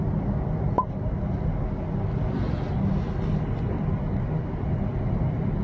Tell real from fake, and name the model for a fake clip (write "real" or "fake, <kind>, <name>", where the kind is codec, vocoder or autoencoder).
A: real